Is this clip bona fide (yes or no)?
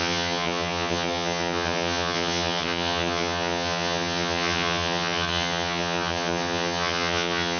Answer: no